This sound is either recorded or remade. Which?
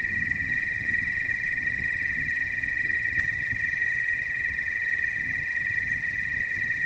remade